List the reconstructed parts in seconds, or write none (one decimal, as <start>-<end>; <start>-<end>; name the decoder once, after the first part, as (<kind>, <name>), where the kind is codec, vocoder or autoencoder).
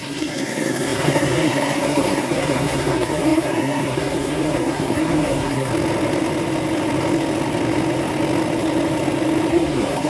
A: 0.0-5.7 (codec, SNAC); 9.5-10.1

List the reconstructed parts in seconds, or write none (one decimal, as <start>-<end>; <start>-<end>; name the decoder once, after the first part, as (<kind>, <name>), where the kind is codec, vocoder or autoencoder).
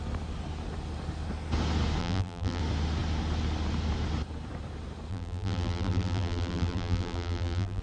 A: 2.0-2.6 (vocoder, BigVGAN v2); 5.1-7.8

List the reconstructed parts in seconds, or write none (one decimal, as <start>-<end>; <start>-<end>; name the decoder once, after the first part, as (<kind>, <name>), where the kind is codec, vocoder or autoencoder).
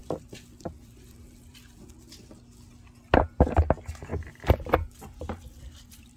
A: 0.0-1.6 (vocoder, BigVGAN v2); 4.1-6.2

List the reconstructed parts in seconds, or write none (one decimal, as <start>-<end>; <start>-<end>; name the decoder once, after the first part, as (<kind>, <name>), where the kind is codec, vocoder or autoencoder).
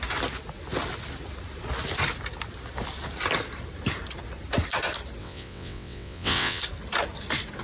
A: 5.2-6.6 (vocoder, WaveNeXt)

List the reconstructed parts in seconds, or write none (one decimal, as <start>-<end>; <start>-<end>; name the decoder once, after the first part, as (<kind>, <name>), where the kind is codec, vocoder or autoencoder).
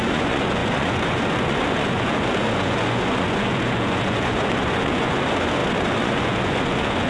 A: 0.0-7.1 (vocoder, Vocos)